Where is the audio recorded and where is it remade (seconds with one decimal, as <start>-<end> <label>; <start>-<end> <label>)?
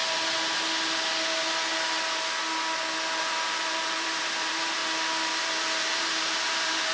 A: 0.0-3.2 recorded; 3.2-4.8 remade; 4.8-5.4 recorded; 5.4-6.9 remade